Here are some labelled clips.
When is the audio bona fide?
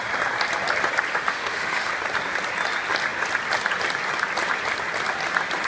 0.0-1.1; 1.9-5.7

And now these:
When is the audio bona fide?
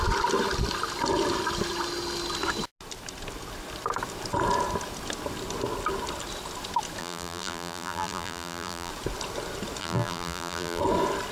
0.0-7.0; 8.9-9.8; 10.8-11.3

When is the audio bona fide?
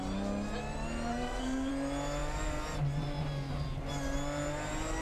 0.0-1.1; 1.7-5.0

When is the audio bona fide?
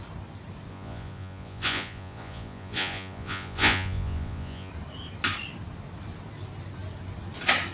0.0-0.7; 4.7-7.7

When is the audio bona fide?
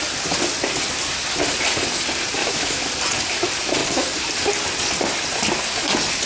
0.0-2.4; 2.9-6.3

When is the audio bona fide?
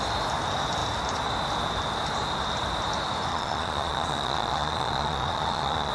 0.0-3.3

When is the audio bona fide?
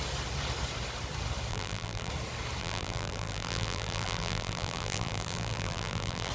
0.0-1.5; 2.1-2.6